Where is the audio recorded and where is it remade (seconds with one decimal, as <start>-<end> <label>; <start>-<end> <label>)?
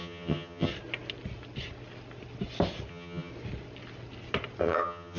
0.0-0.7 remade; 0.7-2.9 recorded; 2.9-3.3 remade; 3.3-4.6 recorded; 4.6-5.2 remade